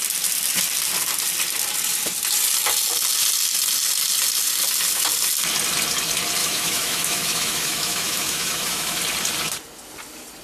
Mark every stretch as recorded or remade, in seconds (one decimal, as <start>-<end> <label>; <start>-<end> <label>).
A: 0.0-6.4 recorded; 6.4-9.0 remade; 9.0-10.4 recorded